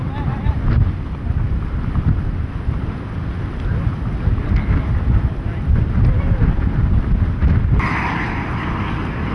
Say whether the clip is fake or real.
real